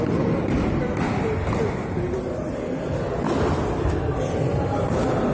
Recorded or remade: recorded